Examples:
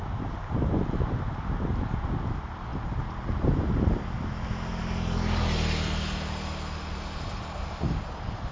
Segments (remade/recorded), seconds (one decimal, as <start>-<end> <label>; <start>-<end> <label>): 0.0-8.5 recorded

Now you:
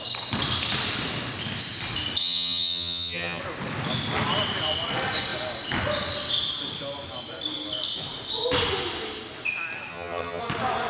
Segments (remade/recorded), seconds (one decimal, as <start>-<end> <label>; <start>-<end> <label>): 0.0-2.2 recorded; 2.2-3.4 remade; 3.4-9.9 recorded; 9.9-10.4 remade; 10.4-10.9 recorded

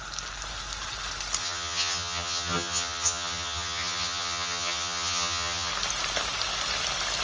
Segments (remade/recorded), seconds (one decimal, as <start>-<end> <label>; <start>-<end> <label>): 0.0-1.4 recorded; 1.4-5.7 remade; 5.7-7.2 recorded